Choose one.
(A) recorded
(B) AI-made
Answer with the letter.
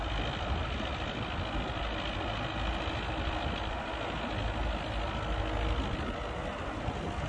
A